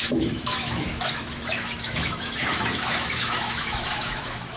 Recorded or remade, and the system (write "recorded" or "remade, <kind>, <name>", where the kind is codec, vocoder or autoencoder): remade, autoencoder, DAC-VAE